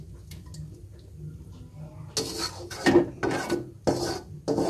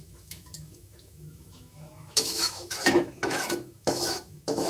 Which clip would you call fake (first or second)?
second